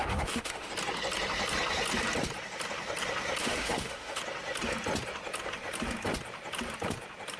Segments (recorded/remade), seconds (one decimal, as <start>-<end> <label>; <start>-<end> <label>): 0.0-0.7 remade; 0.7-3.4 recorded; 3.4-4.2 remade; 4.2-7.4 recorded